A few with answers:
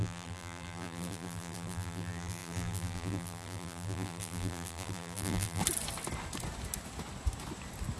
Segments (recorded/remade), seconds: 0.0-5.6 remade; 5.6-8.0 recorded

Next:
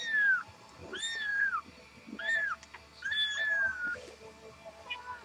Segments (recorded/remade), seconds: 0.0-1.3 recorded; 1.3-2.2 remade; 2.2-5.2 recorded